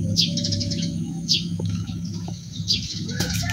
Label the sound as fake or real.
fake